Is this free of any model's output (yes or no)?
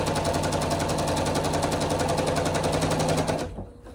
yes